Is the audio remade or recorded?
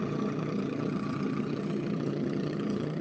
remade